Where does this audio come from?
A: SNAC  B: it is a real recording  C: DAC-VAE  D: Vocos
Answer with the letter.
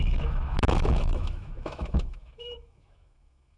C